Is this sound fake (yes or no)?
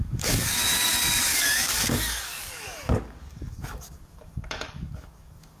yes